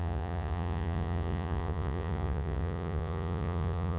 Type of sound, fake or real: fake